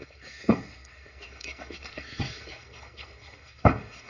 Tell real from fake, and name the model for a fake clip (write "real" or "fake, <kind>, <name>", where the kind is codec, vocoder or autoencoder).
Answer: fake, codec, SNAC